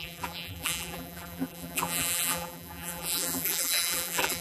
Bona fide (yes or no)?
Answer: no